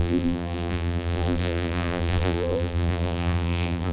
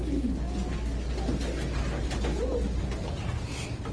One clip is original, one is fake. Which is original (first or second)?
second